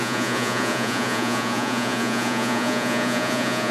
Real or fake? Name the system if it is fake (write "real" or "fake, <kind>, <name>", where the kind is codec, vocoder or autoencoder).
fake, vocoder, Vocos